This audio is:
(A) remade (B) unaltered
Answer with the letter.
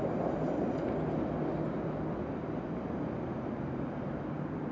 B